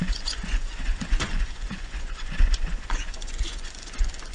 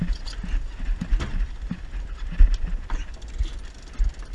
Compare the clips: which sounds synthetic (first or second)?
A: first